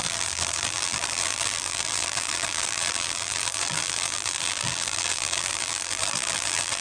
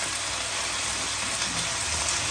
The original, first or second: second